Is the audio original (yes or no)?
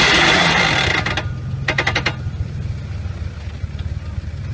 yes